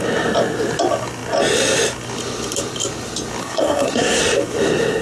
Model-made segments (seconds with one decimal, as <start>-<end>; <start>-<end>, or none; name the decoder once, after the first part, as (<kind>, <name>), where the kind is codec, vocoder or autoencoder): 3.4-4.2 (codec, SNAC)